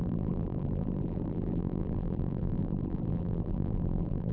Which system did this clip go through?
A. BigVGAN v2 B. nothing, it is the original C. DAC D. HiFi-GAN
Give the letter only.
A